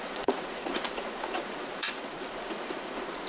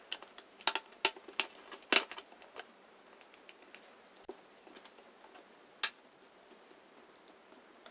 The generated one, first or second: first